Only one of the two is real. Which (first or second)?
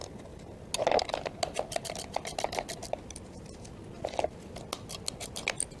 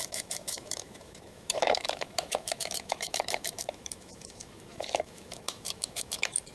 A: first